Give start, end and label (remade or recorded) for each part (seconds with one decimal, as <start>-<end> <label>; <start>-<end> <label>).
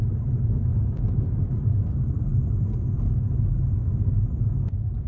0.0-5.1 recorded